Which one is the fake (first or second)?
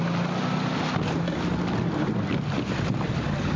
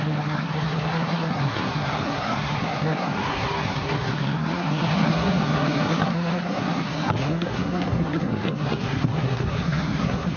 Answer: second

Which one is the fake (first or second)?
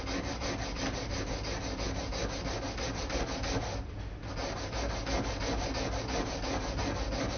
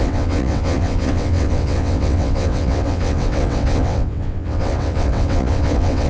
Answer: second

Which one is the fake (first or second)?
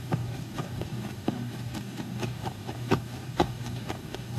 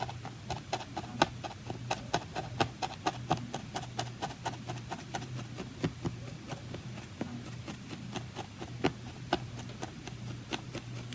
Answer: first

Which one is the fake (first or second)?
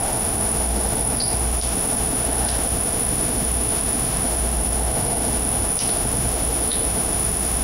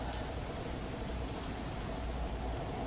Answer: first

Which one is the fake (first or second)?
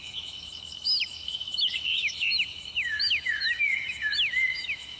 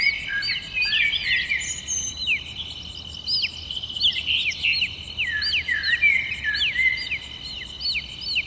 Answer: first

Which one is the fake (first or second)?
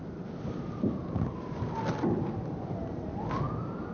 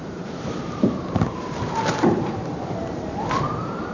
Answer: second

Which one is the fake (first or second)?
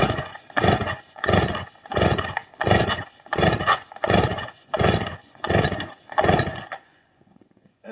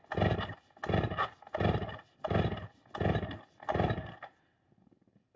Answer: first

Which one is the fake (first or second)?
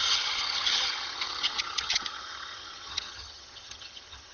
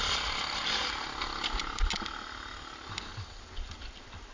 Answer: first